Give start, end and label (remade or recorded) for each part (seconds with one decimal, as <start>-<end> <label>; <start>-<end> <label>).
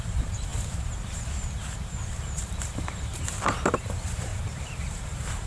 0.0-5.5 remade